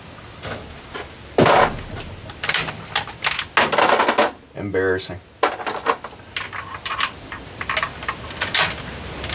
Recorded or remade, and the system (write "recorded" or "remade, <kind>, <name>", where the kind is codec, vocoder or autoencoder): recorded